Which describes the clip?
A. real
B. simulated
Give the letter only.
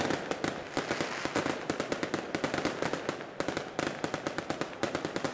A